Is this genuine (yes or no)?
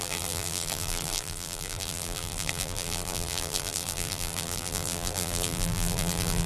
no